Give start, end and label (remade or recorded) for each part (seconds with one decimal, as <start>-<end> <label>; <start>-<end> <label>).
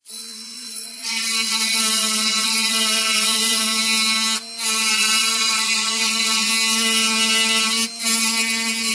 0.0-3.7 remade; 3.7-4.9 recorded; 4.9-6.5 remade; 6.5-8.9 recorded